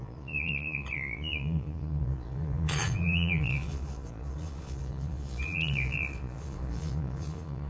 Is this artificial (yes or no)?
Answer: yes